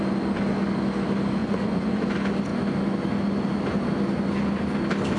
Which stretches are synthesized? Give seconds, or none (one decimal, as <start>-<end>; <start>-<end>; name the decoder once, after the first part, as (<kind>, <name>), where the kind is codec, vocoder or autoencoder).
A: 1.4-2.0 (vocoder, Vocos)